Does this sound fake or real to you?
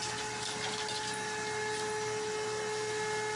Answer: real